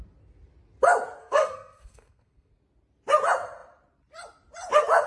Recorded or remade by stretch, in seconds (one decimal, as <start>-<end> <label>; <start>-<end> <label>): 0.0-1.2 recorded; 1.2-2.5 remade; 2.5-5.1 recorded